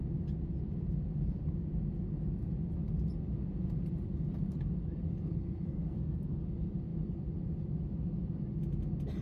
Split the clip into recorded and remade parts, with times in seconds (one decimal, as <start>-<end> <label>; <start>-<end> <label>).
0.0-5.2 recorded; 5.2-6.4 remade; 6.4-9.2 recorded